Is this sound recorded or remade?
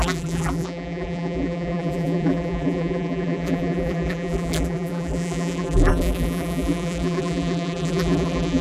remade